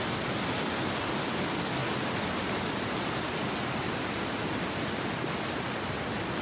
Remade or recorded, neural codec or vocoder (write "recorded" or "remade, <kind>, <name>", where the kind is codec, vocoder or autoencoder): recorded